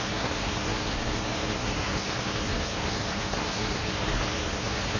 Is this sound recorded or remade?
remade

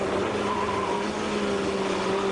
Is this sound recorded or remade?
recorded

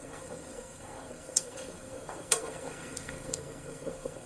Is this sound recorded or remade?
remade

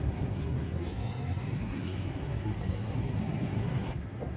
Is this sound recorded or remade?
remade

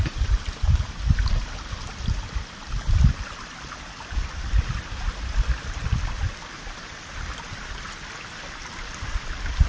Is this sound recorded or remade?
recorded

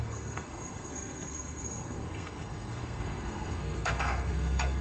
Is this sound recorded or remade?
remade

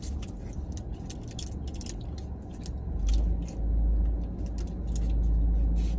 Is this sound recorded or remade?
recorded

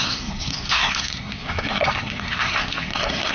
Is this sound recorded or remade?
remade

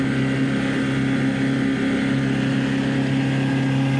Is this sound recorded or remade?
recorded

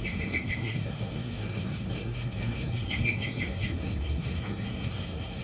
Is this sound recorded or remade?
remade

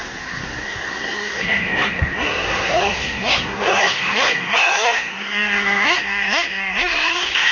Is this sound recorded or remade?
remade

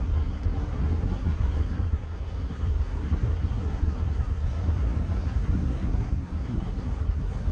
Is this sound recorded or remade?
remade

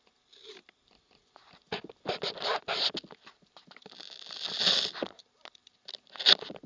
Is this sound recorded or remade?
recorded